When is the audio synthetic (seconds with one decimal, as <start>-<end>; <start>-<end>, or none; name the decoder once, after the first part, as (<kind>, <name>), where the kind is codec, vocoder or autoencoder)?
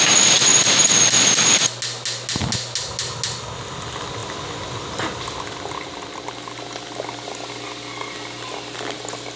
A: none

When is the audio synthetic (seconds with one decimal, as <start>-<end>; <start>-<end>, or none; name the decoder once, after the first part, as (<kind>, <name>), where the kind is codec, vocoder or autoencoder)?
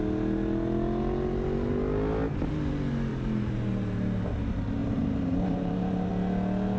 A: 3.1-4.2 (vocoder, BigVGAN v2); 4.8-6.1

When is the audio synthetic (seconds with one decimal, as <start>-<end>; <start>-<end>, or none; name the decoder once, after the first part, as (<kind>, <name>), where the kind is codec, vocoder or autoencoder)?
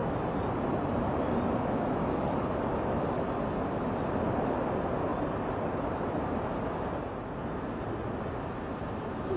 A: 0.0-1.6 (vocoder, BigVGAN v2); 5.1-6.2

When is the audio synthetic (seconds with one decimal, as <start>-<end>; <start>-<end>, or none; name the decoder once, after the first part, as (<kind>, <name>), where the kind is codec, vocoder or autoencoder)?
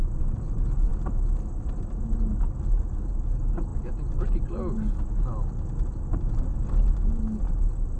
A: none